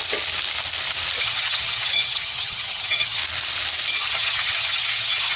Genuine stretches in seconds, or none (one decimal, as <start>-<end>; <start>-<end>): 0.0-1.2; 3.2-4.0